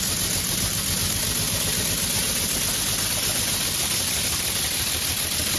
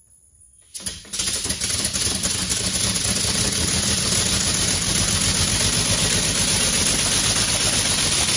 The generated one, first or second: first